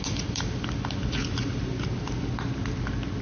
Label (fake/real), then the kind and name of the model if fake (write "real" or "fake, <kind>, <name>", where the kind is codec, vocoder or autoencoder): real